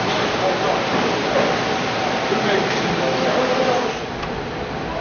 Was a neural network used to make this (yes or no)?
no